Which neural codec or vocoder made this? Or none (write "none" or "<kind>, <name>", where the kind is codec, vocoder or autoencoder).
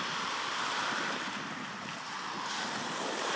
none